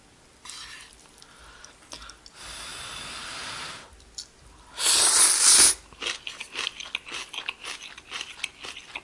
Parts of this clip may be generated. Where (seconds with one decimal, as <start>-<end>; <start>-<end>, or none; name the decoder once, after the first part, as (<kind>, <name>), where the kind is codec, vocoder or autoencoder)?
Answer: none